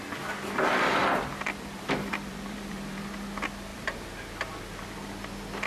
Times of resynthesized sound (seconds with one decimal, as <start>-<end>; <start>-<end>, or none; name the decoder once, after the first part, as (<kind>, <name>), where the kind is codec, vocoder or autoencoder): 1.0-3.0 (vocoder, BigVGAN v2); 3.7-4.6